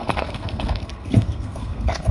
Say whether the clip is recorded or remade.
remade